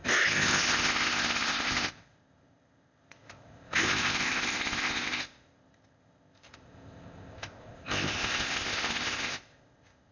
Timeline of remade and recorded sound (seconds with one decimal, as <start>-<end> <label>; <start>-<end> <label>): 0.0-10.1 remade